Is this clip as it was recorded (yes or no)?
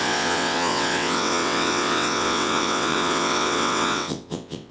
no